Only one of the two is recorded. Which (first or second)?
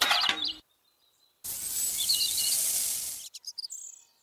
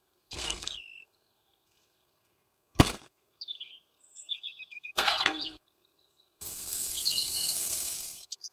first